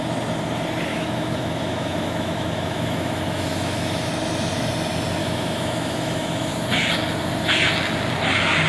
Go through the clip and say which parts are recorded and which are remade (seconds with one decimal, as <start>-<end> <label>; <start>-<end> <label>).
0.0-0.9 recorded; 0.9-4.1 remade; 4.1-5.2 recorded; 5.2-6.5 remade; 6.5-8.7 recorded